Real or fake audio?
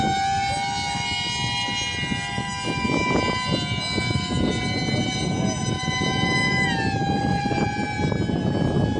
real